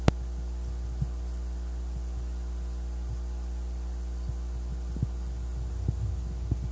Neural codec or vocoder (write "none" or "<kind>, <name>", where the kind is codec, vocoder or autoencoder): none